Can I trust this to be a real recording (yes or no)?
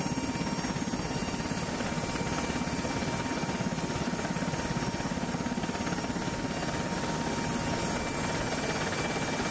yes